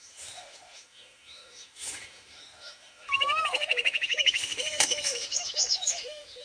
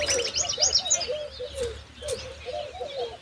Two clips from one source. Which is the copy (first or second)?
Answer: first